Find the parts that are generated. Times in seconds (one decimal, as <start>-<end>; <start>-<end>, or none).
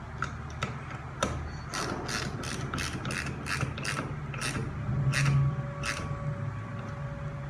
none